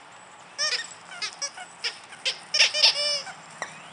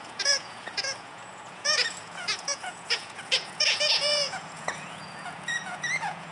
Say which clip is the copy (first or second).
second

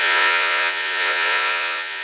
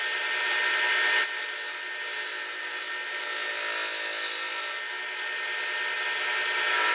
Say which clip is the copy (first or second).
first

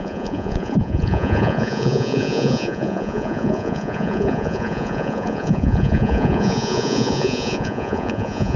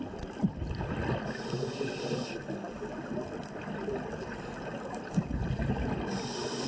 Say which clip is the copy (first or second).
first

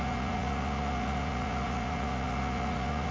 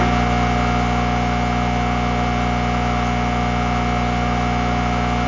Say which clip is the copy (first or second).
first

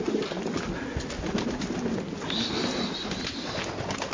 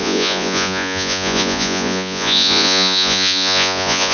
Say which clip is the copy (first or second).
second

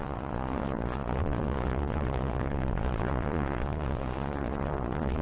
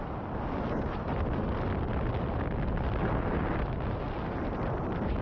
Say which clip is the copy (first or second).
first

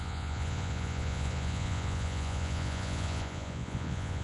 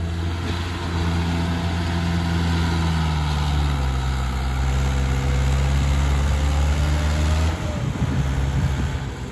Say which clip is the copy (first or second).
first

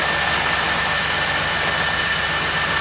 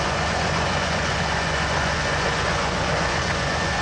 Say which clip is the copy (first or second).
second